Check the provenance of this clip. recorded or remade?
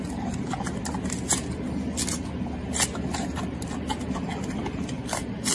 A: recorded